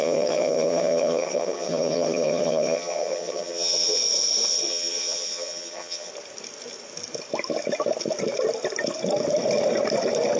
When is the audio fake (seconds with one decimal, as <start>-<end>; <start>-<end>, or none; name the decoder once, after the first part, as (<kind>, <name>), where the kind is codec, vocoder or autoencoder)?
0.0-4.0 (vocoder, HiFi-GAN); 4.5-6.1